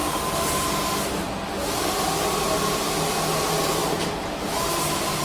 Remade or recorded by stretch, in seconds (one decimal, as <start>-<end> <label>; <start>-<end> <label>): 0.0-5.2 recorded